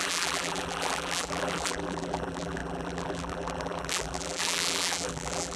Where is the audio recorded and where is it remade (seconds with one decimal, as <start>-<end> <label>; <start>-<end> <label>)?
0.0-5.6 remade